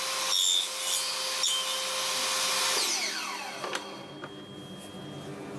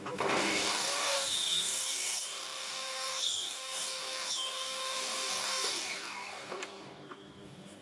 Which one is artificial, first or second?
second